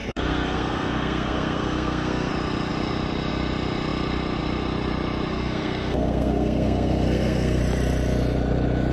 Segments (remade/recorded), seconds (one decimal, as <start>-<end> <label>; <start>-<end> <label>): 0.0-2.3 remade; 2.3-5.3 recorded; 5.3-7.6 remade; 7.6-8.9 recorded